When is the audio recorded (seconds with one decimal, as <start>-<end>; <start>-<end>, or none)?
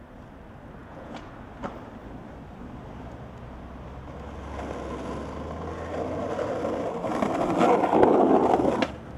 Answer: 0.0-0.8; 1.3-9.2